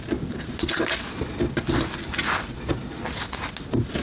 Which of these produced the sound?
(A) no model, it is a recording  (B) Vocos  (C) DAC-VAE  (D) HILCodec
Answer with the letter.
A